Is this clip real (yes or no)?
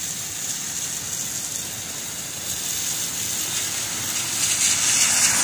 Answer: yes